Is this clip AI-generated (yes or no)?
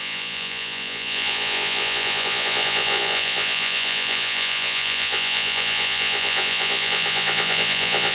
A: yes